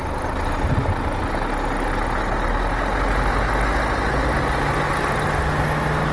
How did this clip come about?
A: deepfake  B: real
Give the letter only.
B